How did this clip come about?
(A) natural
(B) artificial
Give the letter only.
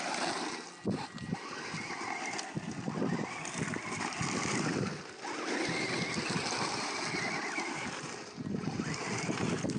A